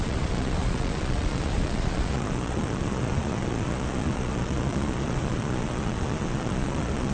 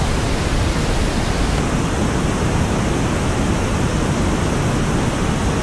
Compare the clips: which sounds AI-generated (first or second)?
first